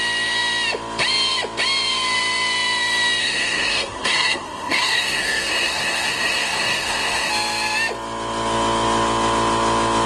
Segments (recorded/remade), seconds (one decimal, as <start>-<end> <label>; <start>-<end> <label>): 0.0-3.2 recorded; 3.2-7.3 remade; 7.3-10.1 recorded